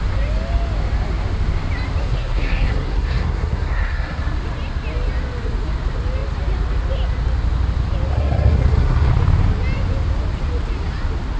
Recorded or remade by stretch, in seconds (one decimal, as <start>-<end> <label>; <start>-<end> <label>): 0.0-2.0 recorded; 2.0-4.2 remade; 4.2-8.1 recorded; 8.1-9.1 remade; 9.1-11.4 recorded